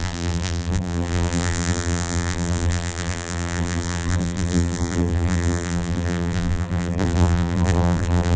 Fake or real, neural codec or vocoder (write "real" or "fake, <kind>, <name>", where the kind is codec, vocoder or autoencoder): fake, vocoder, BigVGAN v2